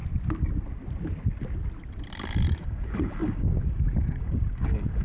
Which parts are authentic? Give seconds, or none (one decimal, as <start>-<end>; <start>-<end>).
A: 0.0-2.6

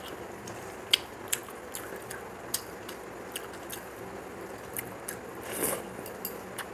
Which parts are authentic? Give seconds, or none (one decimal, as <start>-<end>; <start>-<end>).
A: 0.0-6.7

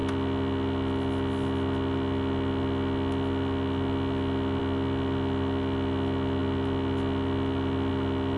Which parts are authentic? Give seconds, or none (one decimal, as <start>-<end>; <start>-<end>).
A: 0.0-8.4